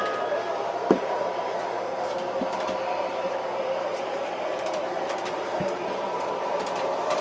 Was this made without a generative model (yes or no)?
no